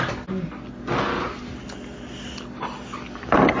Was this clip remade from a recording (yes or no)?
no